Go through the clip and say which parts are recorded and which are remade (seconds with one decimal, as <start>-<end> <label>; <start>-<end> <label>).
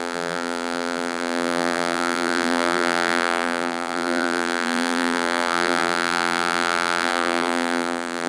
0.0-8.3 remade